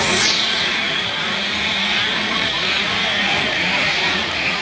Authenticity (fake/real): fake